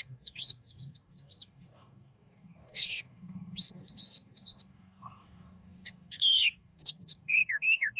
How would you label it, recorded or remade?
remade